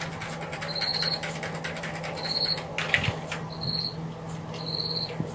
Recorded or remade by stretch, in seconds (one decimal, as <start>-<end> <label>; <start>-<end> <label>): 0.0-5.3 recorded